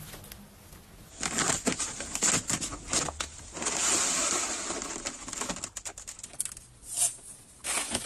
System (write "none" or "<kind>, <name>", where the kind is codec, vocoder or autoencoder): none